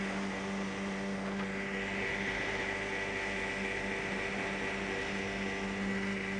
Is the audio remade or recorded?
recorded